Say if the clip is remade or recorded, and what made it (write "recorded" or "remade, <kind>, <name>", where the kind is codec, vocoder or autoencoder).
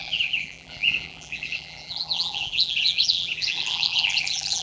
remade, vocoder, BigVGAN v2